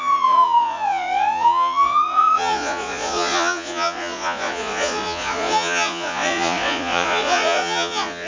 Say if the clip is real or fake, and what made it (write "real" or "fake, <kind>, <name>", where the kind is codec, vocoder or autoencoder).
fake, vocoder, Vocos